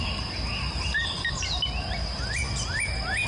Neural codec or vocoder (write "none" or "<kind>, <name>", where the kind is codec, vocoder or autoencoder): none